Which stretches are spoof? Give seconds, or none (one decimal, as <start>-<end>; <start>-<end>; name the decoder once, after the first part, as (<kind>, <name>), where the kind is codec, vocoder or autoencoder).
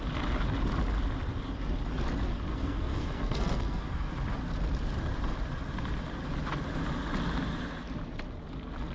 2.5-4.1 (codec, SNAC)